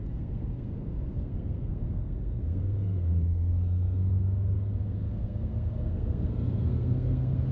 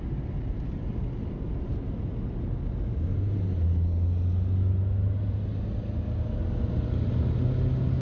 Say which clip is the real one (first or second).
second